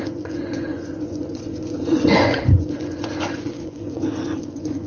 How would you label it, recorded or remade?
remade